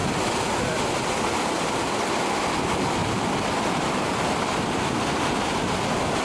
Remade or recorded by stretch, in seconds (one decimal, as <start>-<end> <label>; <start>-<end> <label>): 0.0-3.0 recorded; 3.0-4.4 remade; 4.4-6.2 recorded